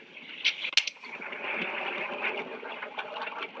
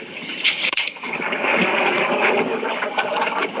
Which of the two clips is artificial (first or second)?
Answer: second